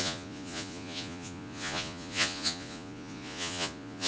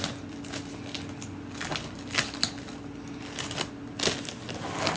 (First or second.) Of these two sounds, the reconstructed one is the first